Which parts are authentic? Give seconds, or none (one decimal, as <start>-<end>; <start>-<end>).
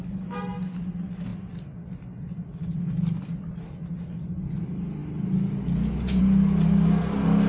0.0-7.5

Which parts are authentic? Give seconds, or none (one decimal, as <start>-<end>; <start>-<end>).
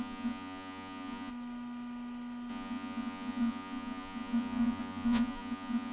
1.3-2.5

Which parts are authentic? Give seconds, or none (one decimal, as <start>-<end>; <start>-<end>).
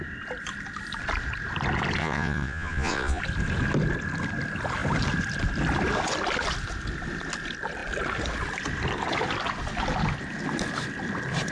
0.0-2.0; 3.2-11.5